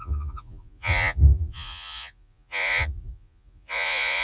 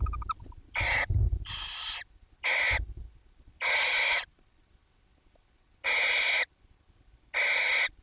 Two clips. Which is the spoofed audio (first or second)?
first